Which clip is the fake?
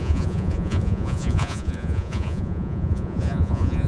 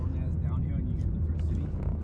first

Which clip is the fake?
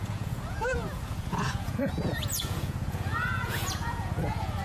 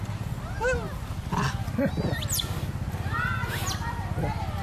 first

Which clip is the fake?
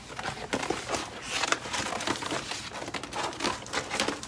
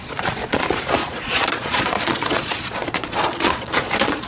second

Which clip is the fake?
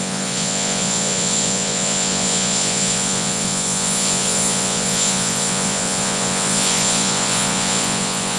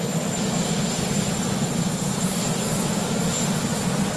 first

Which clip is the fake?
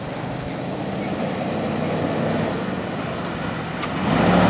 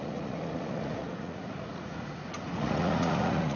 second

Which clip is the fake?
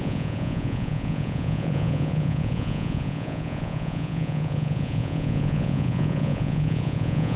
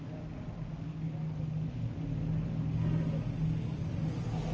first